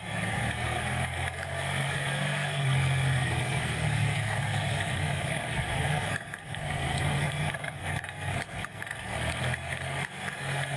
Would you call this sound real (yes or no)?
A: no